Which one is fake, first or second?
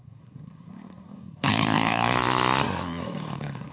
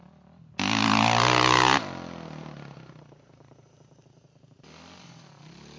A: first